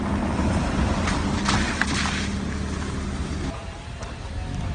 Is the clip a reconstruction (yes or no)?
no